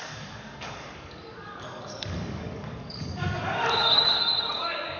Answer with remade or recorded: remade